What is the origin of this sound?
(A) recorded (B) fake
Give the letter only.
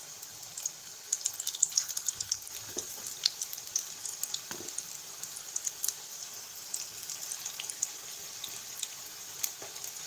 A